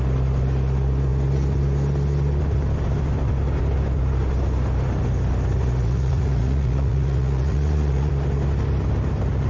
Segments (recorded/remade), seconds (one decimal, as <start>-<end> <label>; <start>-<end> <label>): 0.0-5.8 recorded; 5.8-8.1 remade; 8.1-9.5 recorded